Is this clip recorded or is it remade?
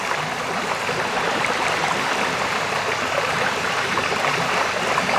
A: remade